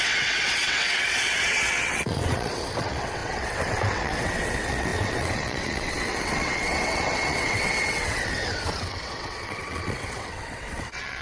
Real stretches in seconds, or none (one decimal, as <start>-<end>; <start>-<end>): none